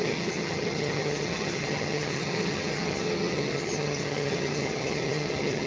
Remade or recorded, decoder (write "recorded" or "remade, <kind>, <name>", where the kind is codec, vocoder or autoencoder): remade, vocoder, HiFi-GAN